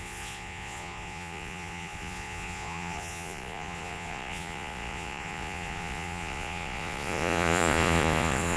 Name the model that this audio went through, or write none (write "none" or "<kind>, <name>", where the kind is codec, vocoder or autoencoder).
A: vocoder, Vocos